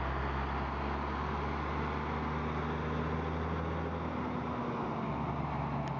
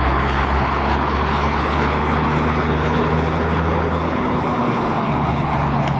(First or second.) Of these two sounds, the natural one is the first